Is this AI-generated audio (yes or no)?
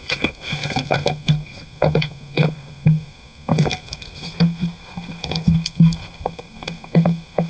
yes